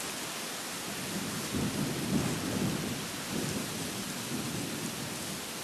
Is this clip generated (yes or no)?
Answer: no